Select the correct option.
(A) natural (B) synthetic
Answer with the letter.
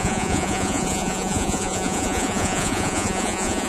B